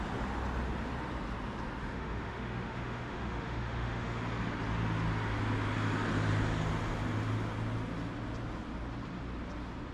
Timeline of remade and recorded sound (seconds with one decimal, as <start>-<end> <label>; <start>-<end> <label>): 0.0-1.8 recorded; 1.8-4.2 remade; 4.2-9.9 recorded